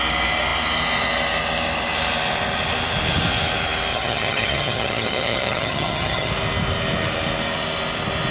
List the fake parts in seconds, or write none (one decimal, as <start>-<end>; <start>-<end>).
3.9-6.3